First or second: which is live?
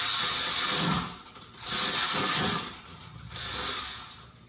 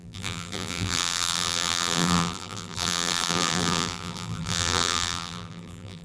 first